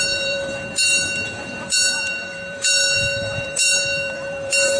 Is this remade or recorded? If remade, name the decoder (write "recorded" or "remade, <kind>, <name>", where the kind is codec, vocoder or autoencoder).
remade, vocoder, BigVGAN v2